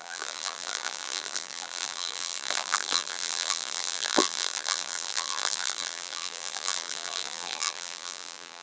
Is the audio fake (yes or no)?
yes